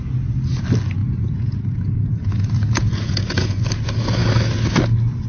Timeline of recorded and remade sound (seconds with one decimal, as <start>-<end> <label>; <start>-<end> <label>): 0.0-1.0 recorded; 1.0-3.6 remade; 3.6-5.3 recorded